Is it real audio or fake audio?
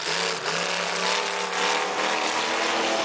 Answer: real